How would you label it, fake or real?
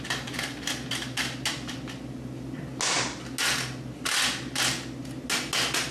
real